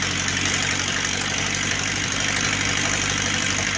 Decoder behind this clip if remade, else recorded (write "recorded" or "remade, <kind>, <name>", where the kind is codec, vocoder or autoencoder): recorded